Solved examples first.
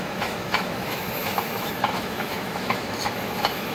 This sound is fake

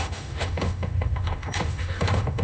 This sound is fake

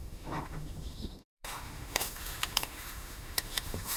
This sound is fake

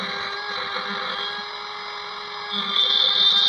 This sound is real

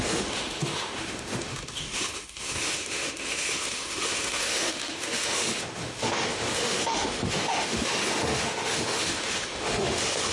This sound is fake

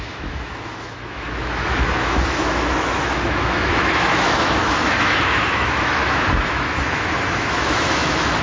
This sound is fake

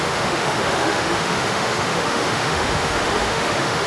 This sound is fake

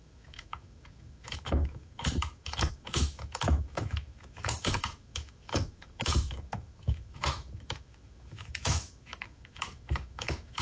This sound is fake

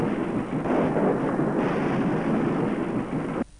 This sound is real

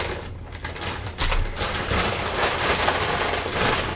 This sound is real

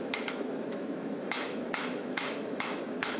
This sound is fake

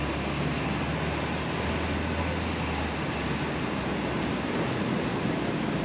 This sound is real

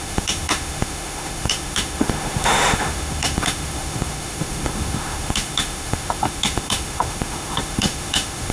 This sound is fake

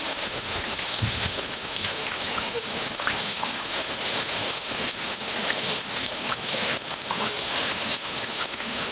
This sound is fake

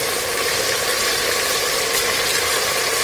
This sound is real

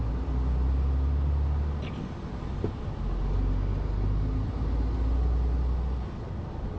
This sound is real